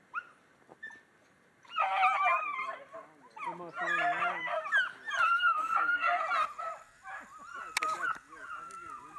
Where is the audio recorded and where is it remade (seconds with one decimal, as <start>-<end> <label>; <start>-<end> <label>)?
0.0-5.4 recorded; 5.4-6.2 remade; 6.2-9.2 recorded